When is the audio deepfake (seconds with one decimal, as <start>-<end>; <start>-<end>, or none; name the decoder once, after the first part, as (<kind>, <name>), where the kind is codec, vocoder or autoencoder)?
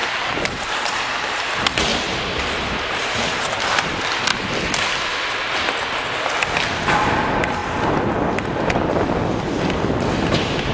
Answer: 0.0-1.4 (vocoder, BigVGAN v2); 1.9-3.3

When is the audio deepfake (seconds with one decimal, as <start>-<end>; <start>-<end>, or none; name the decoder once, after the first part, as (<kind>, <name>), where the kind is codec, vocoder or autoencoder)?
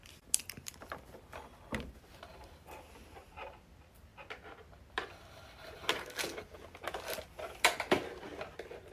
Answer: none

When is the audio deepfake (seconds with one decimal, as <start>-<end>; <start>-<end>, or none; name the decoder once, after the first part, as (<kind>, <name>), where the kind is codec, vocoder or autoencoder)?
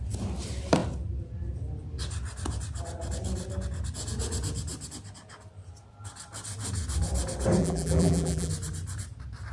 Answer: 7.6-8.5 (vocoder, BigVGAN v2)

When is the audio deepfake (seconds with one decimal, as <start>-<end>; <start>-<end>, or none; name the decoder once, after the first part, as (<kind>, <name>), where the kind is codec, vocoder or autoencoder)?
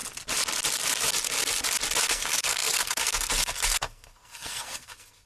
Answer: 2.0-5.3 (codec, SNAC)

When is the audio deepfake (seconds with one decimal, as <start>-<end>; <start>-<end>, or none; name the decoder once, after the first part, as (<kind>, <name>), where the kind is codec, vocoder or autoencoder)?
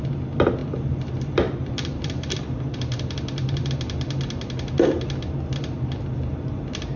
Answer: 0.6-3.7 (vocoder, BigVGAN v2)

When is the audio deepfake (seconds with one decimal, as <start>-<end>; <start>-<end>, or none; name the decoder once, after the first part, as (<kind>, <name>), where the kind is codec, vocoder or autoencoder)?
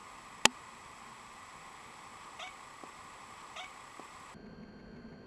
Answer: none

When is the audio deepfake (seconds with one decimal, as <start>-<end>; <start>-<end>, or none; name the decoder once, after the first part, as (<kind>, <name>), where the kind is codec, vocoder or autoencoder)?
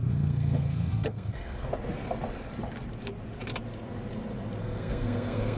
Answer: 0.0-1.7 (codec, SNAC); 4.6-5.6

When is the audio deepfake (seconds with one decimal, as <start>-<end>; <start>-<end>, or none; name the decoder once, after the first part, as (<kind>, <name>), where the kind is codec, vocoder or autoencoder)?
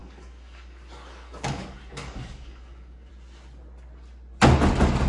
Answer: 0.0-3.1 (codec, DAC)